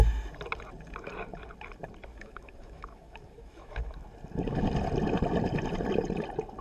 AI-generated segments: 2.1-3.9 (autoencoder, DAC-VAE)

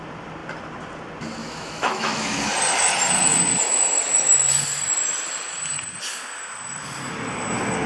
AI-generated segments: 1.4-2.5 (autoencoder, DAC-VAE)

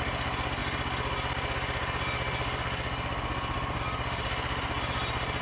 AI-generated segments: none